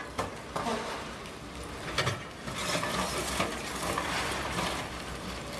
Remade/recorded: recorded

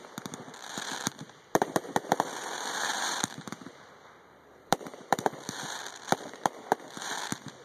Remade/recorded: remade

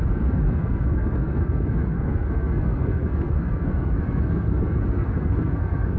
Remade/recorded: remade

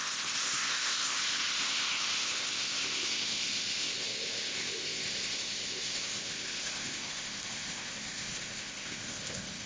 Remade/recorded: remade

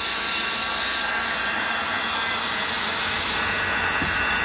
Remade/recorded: recorded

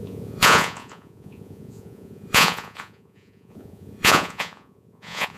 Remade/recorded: remade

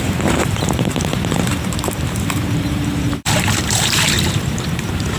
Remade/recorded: remade